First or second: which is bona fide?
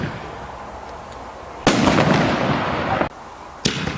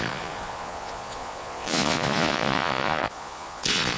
first